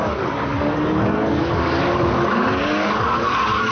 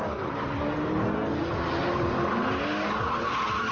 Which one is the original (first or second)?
second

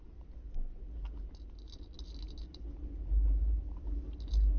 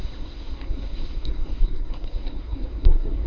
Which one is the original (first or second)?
first